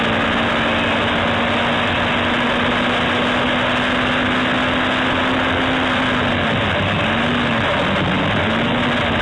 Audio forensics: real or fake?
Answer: real